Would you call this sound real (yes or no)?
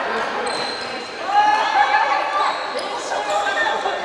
yes